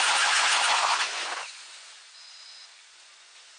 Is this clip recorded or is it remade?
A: remade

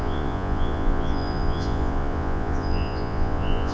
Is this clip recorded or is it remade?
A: remade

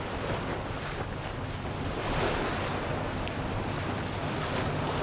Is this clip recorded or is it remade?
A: recorded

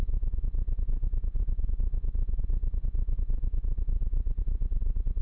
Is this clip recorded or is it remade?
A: recorded